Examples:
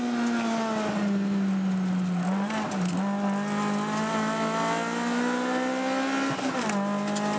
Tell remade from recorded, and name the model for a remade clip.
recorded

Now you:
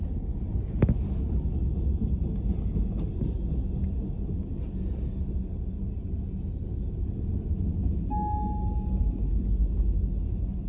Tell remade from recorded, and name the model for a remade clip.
recorded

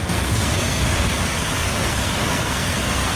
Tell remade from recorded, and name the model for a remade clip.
remade, codec, SNAC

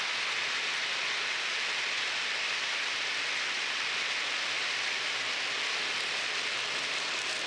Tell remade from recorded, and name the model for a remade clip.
recorded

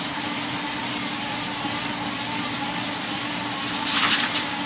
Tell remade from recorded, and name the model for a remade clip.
recorded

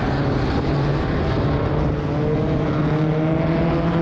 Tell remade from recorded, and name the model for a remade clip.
recorded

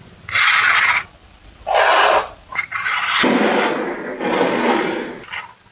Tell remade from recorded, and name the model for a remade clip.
recorded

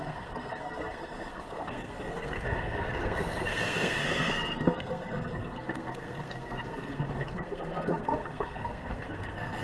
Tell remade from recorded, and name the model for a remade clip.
remade, codec, SNAC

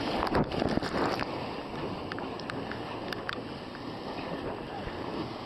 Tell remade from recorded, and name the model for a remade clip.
recorded